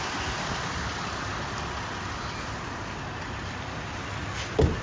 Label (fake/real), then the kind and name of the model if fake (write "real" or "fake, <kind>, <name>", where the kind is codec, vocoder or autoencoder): real